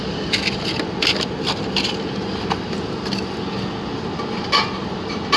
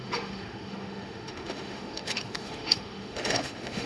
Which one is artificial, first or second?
second